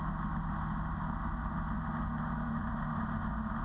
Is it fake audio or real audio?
real